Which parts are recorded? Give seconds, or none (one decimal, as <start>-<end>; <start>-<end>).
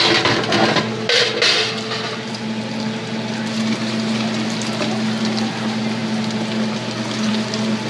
0.0-7.9